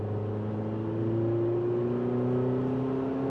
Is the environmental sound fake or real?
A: real